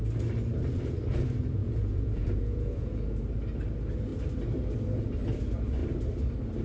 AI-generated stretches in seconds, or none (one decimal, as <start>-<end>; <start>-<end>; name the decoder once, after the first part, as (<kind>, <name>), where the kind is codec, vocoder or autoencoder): 1.6-2.9 (vocoder, Vocos)